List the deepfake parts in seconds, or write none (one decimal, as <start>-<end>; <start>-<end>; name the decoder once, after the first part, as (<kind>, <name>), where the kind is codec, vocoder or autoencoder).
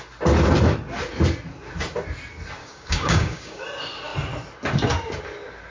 2.6-3.6 (codec, DAC)